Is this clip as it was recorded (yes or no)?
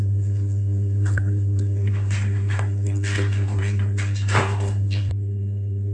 no